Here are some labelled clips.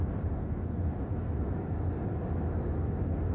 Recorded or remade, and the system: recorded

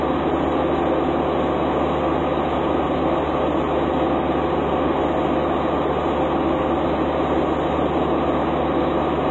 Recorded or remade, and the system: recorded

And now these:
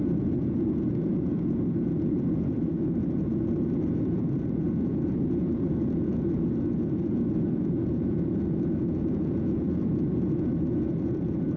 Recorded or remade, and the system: remade, vocoder, Vocos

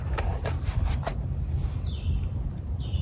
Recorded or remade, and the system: recorded